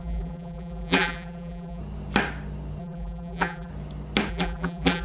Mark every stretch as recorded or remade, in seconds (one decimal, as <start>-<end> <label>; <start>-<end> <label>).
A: 0.0-1.8 remade; 1.8-2.8 recorded; 2.8-3.7 remade; 3.7-4.3 recorded; 4.3-5.0 remade